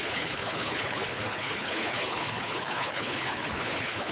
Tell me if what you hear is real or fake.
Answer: fake